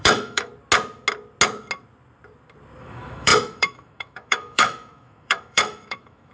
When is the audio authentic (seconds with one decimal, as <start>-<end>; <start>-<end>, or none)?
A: 0.5-2.8